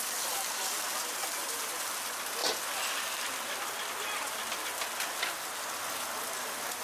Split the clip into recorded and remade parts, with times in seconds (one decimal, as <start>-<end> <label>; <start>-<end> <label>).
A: 0.0-6.8 recorded